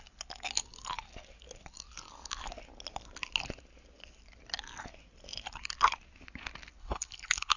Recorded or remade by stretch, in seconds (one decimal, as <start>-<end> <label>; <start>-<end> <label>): 0.0-6.8 recorded; 6.8-7.6 remade